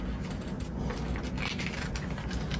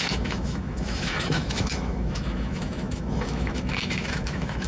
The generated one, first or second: second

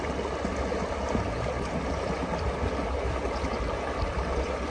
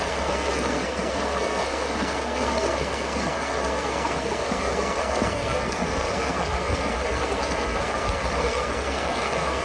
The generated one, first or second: second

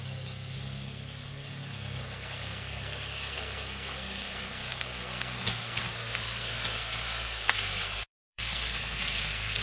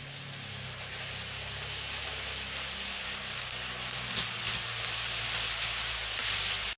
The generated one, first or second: first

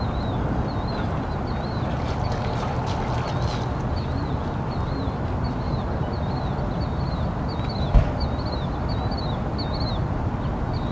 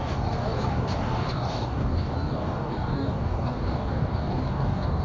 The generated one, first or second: second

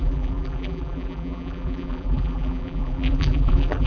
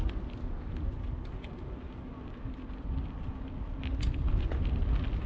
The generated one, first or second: first